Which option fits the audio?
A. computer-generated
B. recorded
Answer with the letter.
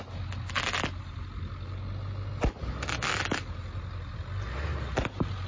B